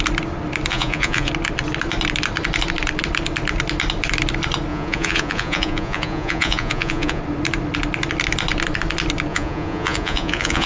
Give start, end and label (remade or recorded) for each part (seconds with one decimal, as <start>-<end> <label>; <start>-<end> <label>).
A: 0.0-0.7 recorded; 0.7-1.3 remade; 1.3-4.7 recorded; 4.7-7.2 remade; 7.2-9.3 recorded; 9.3-10.7 remade